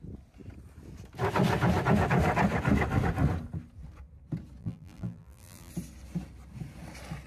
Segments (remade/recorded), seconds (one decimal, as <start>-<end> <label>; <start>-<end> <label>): 0.0-4.6 recorded; 4.6-5.7 remade; 5.7-7.3 recorded